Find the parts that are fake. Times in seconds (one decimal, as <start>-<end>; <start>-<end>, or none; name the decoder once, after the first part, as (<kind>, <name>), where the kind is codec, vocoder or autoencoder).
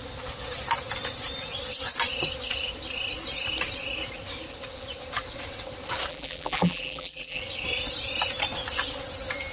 6.1-7.4 (vocoder, BigVGAN v2)